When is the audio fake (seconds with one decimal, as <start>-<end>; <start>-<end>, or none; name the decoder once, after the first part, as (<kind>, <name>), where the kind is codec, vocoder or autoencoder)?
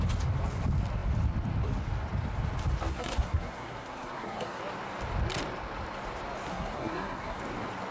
2.9-4.6 (codec, SNAC); 6.5-7.4